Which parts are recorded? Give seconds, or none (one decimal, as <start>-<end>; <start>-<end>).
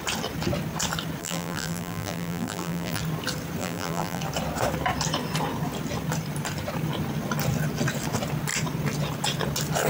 0.0-1.2; 3.0-3.6; 4.2-9.9